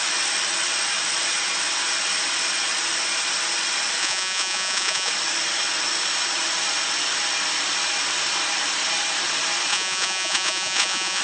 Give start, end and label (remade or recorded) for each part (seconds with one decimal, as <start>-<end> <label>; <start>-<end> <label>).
0.0-4.0 recorded; 4.0-5.1 remade; 5.1-9.7 recorded; 9.7-11.2 remade